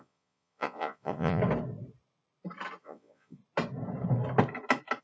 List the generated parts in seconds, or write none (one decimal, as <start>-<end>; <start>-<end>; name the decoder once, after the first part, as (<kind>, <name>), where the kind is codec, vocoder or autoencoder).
0.0-1.4 (vocoder, Vocos); 2.8-3.4

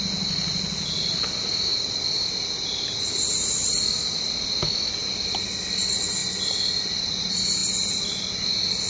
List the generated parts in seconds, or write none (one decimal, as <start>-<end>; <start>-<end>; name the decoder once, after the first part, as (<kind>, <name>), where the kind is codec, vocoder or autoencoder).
none

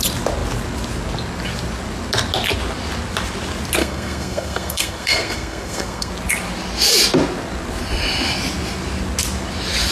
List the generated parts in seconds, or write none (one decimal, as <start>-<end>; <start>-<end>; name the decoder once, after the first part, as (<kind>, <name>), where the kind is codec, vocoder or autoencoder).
3.8-6.1 (codec, SNAC)

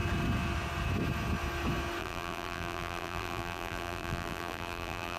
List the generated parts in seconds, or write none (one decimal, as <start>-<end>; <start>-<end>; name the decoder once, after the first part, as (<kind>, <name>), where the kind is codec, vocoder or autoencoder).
2.0-5.2 (vocoder, BigVGAN v2)